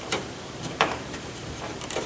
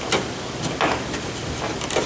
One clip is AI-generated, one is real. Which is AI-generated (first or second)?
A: first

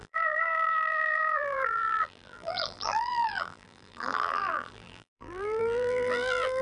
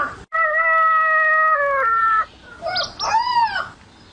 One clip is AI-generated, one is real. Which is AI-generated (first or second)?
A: first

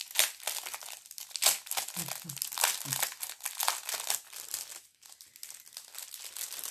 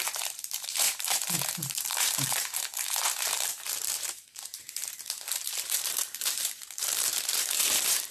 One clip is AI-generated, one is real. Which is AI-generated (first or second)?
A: second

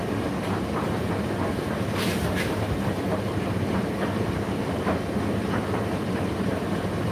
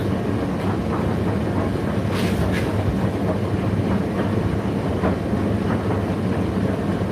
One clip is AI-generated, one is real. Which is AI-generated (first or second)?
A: first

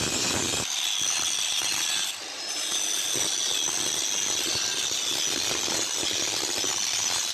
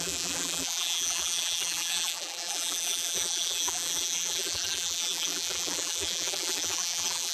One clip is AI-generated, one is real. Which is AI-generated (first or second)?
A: second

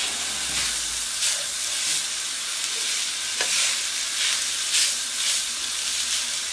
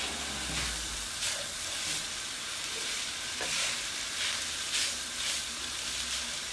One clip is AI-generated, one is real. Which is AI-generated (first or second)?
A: second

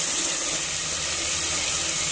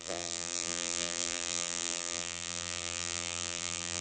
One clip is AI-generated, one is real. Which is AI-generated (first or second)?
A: second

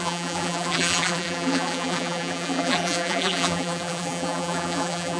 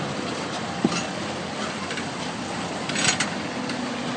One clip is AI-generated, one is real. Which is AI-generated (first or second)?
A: first